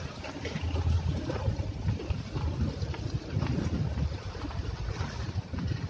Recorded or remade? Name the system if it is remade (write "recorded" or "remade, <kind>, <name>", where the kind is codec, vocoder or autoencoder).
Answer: recorded